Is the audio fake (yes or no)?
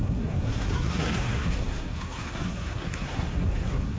yes